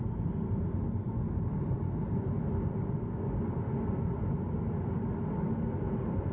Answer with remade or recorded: recorded